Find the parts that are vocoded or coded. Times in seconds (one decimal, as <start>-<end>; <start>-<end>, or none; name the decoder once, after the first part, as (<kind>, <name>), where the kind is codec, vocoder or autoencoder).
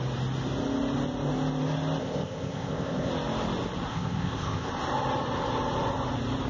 2.0-3.1 (codec, ZipCodec); 3.9-4.7